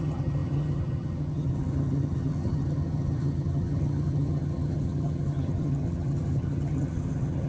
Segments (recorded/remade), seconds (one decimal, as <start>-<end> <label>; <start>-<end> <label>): 0.0-7.5 remade